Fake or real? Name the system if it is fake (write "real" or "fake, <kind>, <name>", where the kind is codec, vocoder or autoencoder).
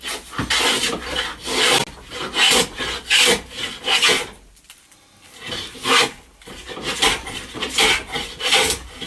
real